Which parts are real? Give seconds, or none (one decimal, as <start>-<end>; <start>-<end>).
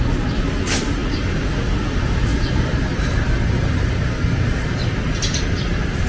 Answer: 0.0-2.3